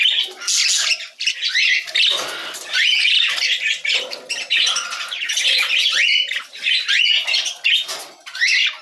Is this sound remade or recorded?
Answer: recorded